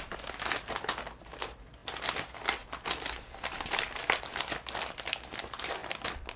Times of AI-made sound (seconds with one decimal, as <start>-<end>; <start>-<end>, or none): none